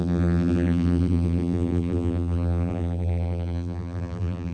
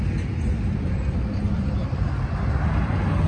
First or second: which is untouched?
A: second